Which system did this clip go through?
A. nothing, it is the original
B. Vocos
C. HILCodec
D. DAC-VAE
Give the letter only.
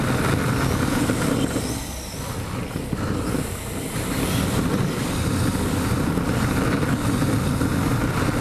A